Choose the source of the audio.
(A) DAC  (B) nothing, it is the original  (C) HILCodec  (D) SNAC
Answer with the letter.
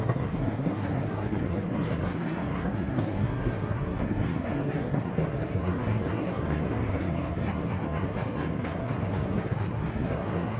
D